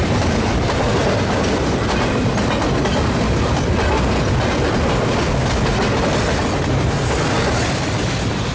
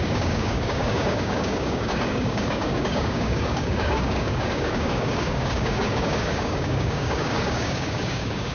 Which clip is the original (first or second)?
first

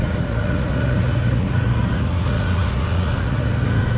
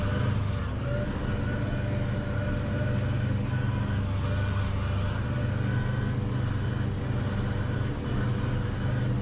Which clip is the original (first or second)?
second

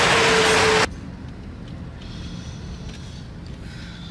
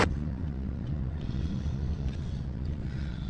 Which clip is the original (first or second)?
first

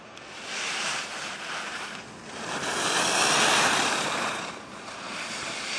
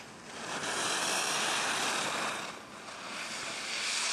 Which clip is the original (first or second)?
second